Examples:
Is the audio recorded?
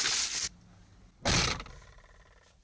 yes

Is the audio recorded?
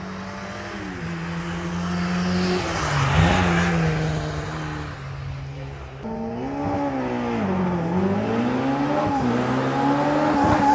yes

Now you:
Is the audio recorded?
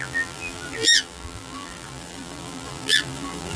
no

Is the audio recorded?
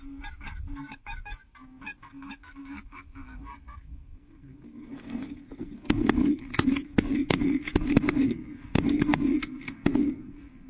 no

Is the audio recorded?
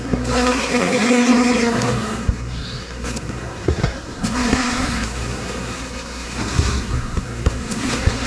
no